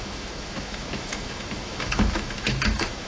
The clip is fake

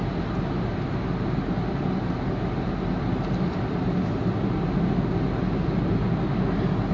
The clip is real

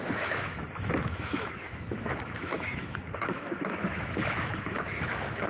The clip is fake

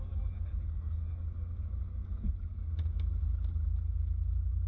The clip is real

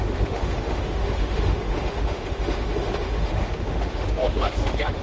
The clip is fake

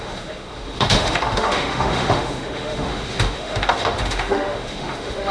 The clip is fake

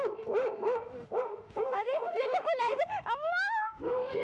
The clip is fake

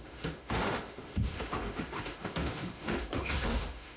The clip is fake